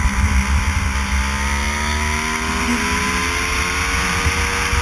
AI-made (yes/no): no